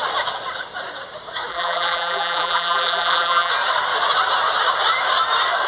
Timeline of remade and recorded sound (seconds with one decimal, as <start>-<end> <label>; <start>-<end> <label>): 0.0-1.5 recorded; 1.5-3.5 remade; 3.5-5.7 recorded